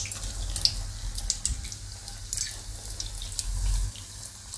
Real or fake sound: real